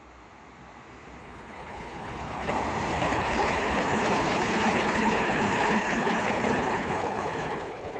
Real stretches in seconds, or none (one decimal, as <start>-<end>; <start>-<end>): 0.0-1.2; 2.5-2.9